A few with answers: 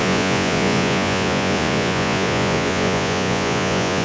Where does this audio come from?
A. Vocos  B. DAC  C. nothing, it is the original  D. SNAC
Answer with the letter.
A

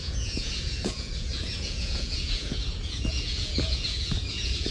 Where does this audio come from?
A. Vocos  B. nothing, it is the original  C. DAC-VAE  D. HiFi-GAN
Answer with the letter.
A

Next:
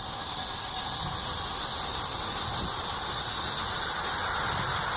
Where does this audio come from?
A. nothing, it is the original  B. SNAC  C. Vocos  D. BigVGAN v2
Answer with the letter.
A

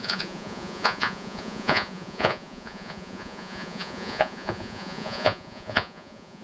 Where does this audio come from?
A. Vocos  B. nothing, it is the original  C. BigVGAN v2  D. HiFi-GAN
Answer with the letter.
A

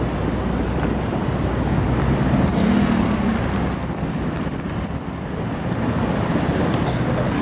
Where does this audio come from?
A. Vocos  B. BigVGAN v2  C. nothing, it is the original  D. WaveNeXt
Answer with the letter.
C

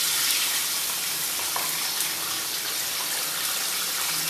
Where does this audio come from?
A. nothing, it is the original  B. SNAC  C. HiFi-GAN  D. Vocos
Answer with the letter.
A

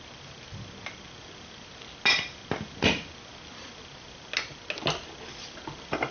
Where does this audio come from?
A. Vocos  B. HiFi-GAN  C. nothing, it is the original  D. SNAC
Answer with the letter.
C